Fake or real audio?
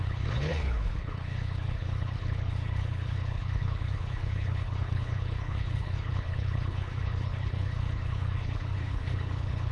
fake